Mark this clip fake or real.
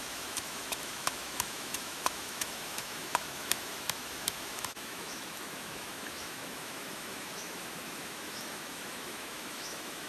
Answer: fake